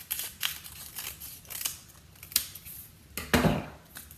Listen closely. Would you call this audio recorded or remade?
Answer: recorded